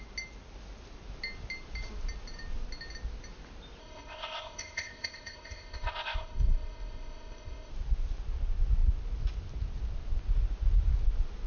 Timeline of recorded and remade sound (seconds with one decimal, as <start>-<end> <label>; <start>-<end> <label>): 0.0-3.8 recorded; 3.8-7.7 remade; 7.7-11.5 recorded